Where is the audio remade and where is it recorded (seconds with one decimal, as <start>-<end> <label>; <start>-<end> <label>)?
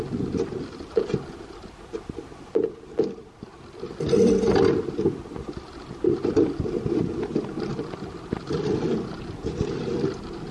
0.0-10.5 recorded